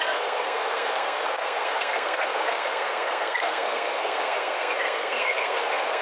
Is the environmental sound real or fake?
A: fake